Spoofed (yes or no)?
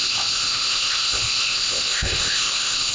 yes